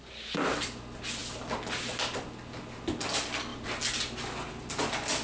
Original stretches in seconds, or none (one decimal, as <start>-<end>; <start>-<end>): 0.0-5.2